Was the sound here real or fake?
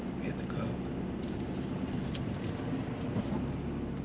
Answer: real